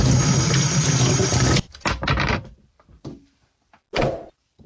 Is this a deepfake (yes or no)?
no